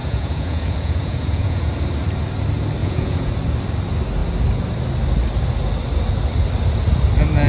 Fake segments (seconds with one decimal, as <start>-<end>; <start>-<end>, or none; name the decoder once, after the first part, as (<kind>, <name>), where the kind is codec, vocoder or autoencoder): 0.0-1.7 (vocoder, Vocos); 2.8-3.3